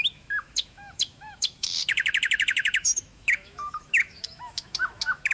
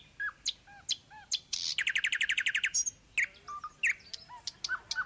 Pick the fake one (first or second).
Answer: first